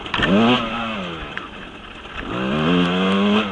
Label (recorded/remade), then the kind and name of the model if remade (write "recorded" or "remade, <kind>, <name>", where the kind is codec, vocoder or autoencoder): recorded